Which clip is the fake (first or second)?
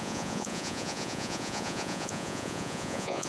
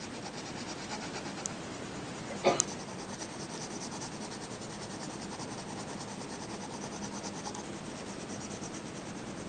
first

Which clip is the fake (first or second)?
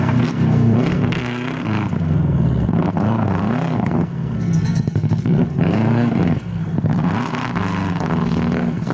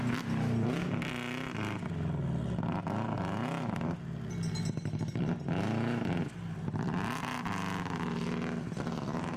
first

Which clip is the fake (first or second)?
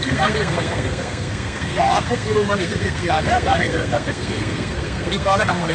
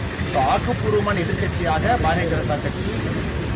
first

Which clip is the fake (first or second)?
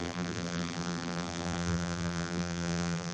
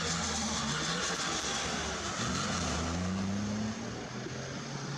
first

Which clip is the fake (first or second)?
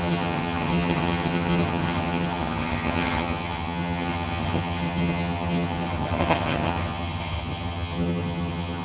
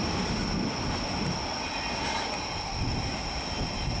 first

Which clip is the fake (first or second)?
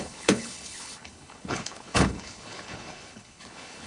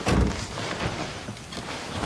first